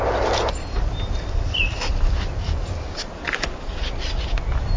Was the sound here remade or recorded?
recorded